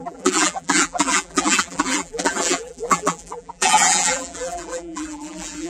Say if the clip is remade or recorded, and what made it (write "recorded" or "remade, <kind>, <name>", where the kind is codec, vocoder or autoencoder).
remade, vocoder, BigVGAN v2